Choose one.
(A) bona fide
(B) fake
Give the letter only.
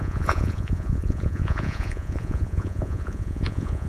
B